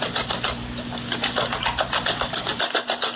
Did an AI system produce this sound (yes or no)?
no